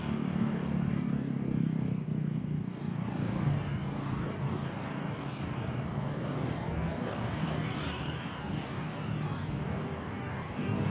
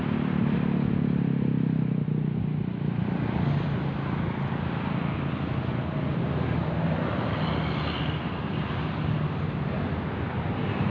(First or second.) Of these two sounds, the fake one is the first